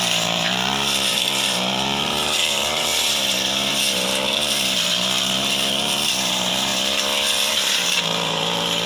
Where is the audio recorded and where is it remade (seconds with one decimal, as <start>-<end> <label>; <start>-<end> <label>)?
0.0-2.9 remade; 2.9-3.7 recorded; 3.7-6.7 remade; 6.7-7.5 recorded; 7.5-8.9 remade